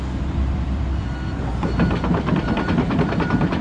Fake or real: fake